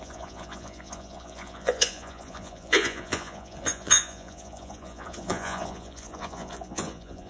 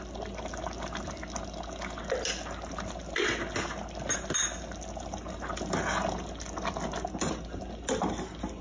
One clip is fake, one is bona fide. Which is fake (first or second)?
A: first